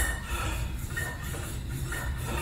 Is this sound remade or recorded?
recorded